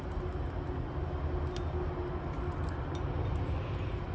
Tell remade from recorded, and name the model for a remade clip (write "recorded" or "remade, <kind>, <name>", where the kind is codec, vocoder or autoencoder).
recorded